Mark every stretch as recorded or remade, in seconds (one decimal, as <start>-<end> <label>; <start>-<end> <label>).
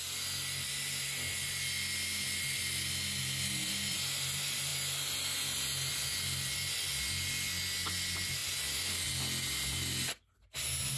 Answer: 0.0-11.0 recorded